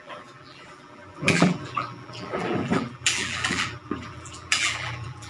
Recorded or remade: remade